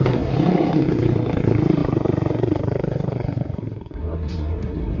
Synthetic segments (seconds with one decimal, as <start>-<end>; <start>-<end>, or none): 0.0-5.0